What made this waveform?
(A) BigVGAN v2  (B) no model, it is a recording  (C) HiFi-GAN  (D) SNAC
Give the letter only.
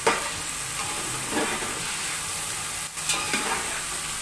B